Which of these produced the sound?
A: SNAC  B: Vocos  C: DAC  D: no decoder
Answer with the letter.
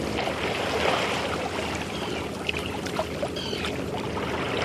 D